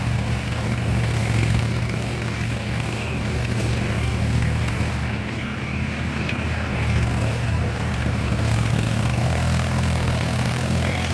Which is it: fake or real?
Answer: fake